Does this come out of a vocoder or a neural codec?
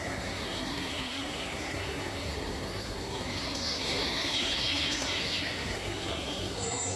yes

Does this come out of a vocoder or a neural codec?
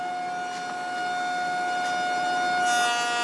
no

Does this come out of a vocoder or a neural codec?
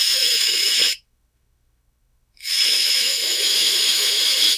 yes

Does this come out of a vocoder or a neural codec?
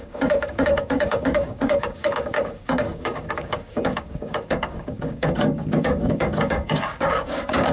yes